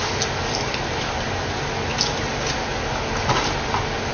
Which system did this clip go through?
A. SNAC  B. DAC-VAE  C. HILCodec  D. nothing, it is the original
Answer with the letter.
D